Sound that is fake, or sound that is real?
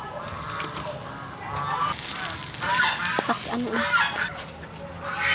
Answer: real